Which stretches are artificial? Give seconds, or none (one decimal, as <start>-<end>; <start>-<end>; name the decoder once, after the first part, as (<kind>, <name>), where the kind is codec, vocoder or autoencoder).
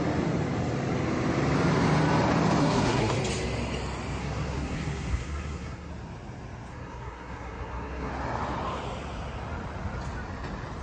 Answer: 2.6-3.1 (codec, SNAC); 4.2-5.9; 6.7-8.1